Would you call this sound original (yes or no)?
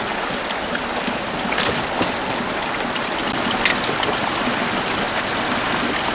yes